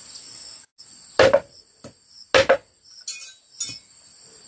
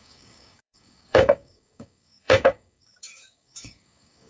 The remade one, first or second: second